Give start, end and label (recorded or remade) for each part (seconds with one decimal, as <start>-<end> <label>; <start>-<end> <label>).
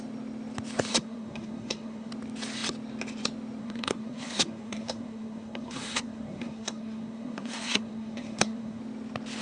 0.0-0.9 recorded; 0.9-2.1 remade; 2.1-3.6 recorded; 3.6-8.8 remade; 8.8-9.4 recorded